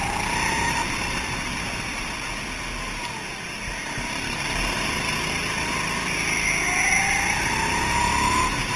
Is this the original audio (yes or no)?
yes